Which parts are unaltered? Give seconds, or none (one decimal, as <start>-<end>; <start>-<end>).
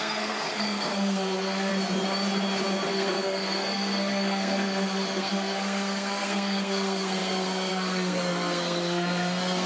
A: 1.7-2.9